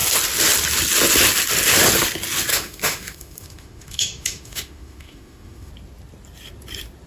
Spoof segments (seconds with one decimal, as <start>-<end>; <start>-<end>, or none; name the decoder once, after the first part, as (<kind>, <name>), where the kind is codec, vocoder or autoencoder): 2.5-5.7 (autoencoder, DAC-VAE)